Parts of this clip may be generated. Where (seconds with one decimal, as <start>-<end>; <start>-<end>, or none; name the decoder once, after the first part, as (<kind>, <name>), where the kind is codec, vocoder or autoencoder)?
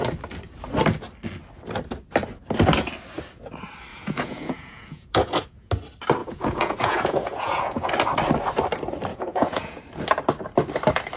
3.9-5.7 (vocoder, Vocos); 6.2-7.9; 9.1-9.8